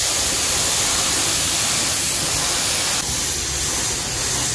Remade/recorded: recorded